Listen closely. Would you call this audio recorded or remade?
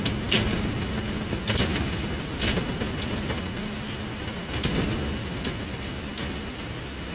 recorded